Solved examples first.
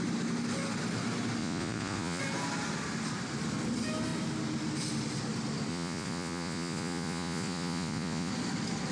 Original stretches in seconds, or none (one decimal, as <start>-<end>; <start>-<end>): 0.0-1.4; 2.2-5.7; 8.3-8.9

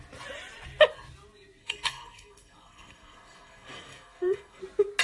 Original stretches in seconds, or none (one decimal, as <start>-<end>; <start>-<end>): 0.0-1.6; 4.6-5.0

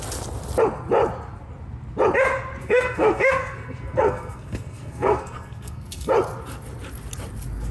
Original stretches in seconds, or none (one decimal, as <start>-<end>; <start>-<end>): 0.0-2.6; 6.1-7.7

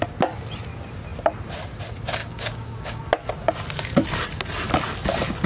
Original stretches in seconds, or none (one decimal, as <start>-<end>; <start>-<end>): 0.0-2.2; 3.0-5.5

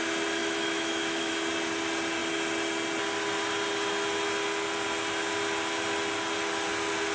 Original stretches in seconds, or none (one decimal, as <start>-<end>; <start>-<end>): 0.0-0.4; 1.3-7.1

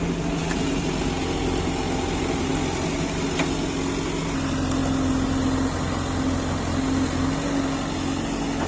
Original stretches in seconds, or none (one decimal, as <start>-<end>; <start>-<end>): 0.0-0.4; 1.0-8.7